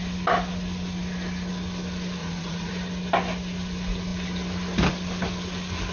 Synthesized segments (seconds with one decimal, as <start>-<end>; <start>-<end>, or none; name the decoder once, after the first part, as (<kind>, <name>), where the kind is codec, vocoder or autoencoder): 2.2-2.7 (vocoder, Vocos)